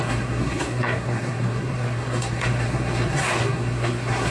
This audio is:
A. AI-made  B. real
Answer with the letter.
A